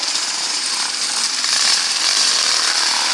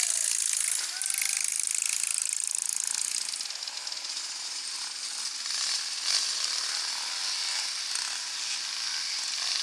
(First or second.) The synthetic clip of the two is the first